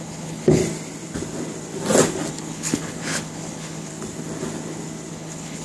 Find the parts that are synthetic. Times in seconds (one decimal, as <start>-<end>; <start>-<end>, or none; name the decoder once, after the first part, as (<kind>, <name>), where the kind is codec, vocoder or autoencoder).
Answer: 0.0-0.6 (codec, HILCodec); 2.3-3.9; 5.1-5.6